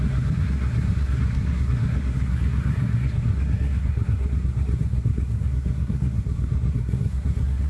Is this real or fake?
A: fake